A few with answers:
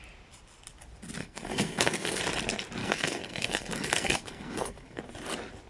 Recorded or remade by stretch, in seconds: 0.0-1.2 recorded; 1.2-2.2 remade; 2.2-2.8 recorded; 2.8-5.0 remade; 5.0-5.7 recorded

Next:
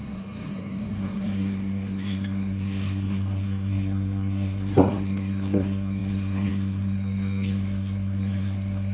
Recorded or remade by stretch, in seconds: 0.0-8.9 remade

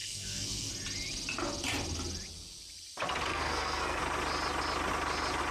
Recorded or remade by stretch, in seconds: 0.0-0.7 remade; 0.7-3.3 recorded; 3.3-4.0 remade; 4.0-5.5 recorded

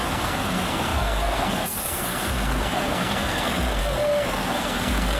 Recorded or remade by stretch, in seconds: 0.0-5.2 remade

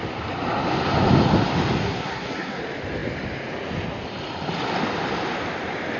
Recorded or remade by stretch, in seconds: 0.0-1.8 recorded; 1.8-2.6 remade; 2.6-6.0 recorded

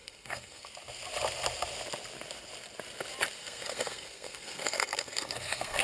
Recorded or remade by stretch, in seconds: 0.0-0.7 remade; 0.7-3.4 recorded; 3.4-5.8 remade

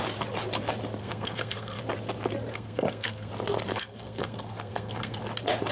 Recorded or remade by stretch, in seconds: 0.0-1.0 recorded; 1.0-1.8 remade; 1.8-2.5 recorded; 2.5-3.3 remade; 3.3-3.7 recorded; 3.7-5.2 remade; 5.2-5.7 recorded